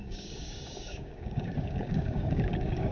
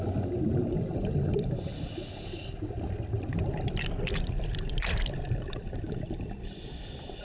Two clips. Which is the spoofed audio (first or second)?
first